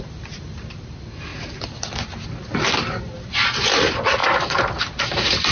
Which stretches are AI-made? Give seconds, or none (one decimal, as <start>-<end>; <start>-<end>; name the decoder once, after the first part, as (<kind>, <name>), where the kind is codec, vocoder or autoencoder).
0.0-1.3 (vocoder, BigVGAN v2); 3.3-5.5